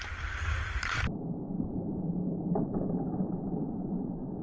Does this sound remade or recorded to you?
remade